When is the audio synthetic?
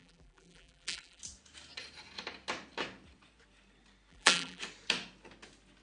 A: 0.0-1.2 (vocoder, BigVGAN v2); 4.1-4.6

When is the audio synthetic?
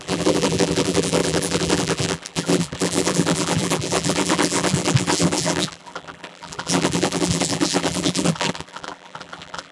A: 0.0-9.7 (vocoder, BigVGAN v2)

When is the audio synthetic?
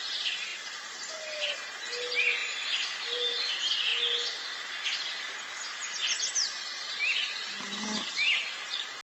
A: 0.5-1.1 (vocoder, BigVGAN v2); 2.4-3.5